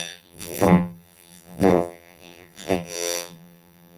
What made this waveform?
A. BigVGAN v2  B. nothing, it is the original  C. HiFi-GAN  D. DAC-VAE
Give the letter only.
A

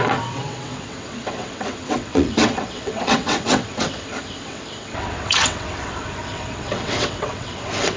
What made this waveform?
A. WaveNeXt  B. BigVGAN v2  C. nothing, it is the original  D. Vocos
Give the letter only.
A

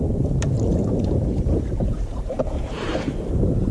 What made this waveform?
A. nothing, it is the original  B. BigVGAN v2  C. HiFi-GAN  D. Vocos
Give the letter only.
B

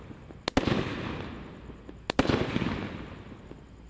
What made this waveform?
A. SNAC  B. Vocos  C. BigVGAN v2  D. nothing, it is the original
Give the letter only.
D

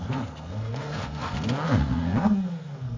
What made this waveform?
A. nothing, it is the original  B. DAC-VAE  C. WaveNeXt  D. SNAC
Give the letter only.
D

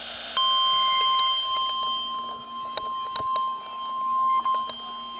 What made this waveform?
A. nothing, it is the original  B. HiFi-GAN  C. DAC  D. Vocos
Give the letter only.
A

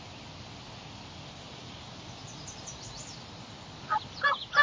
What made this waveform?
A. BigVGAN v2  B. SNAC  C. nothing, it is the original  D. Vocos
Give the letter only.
C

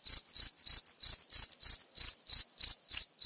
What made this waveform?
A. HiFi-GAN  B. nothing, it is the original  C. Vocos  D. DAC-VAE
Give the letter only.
B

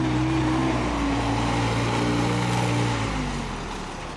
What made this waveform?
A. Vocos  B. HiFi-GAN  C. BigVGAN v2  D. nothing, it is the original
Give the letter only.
D